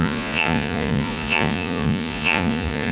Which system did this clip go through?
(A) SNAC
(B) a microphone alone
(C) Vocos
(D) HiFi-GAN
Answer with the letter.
C